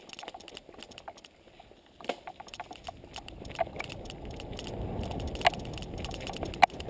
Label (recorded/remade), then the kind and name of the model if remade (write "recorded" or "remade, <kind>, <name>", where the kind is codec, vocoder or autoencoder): recorded